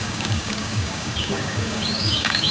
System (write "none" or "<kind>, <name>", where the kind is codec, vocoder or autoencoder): codec, DAC